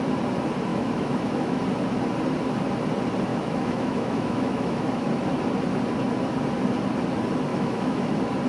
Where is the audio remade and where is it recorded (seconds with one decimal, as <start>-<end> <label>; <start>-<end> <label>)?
0.0-0.7 recorded; 0.7-1.6 remade; 1.6-3.3 recorded; 3.3-5.1 remade; 5.1-7.5 recorded; 7.5-8.1 remade; 8.1-8.5 recorded